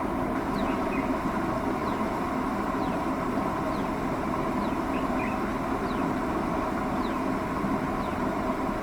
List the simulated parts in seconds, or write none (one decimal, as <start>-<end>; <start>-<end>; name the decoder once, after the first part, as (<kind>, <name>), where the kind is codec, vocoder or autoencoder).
none